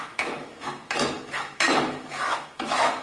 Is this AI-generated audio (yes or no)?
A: yes